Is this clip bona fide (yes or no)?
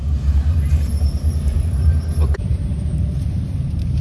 no